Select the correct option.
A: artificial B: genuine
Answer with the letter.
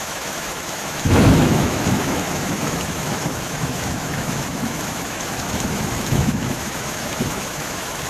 A